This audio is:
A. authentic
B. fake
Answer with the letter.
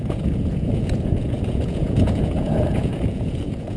B